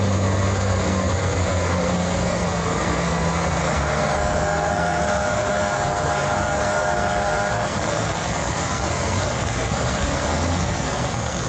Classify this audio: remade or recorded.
remade